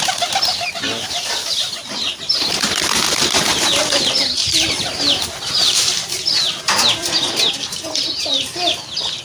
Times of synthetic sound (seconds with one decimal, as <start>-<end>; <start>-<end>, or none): none